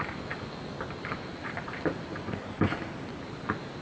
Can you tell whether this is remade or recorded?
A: recorded